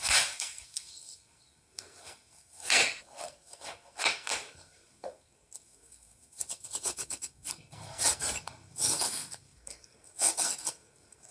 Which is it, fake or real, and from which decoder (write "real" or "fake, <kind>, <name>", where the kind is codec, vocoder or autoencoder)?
fake, codec, SNAC